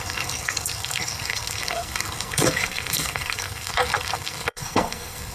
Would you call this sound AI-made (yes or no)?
yes